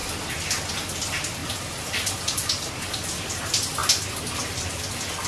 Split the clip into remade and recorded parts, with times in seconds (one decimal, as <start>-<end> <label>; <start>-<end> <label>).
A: 0.0-5.3 recorded